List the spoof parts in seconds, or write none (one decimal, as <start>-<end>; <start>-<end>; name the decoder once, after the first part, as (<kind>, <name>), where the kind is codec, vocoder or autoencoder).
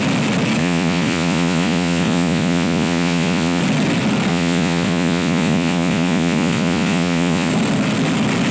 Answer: 0.6-3.6 (vocoder, Vocos); 4.3-7.5